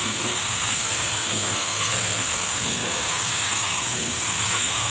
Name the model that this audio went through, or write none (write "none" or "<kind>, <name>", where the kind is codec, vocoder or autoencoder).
codec, SNAC